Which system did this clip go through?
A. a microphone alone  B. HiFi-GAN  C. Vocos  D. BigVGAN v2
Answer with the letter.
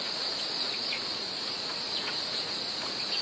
C